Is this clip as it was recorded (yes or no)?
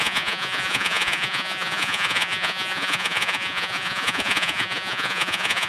no